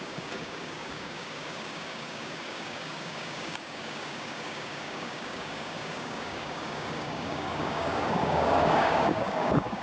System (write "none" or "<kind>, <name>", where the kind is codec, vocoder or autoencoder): codec, DAC